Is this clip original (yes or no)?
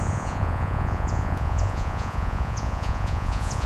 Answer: no